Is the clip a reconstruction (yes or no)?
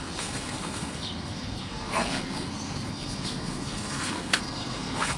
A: yes